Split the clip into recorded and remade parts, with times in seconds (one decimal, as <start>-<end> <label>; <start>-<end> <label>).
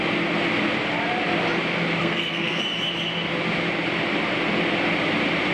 0.0-2.0 recorded; 2.0-2.6 remade; 2.6-5.5 recorded